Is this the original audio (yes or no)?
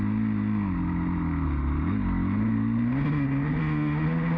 yes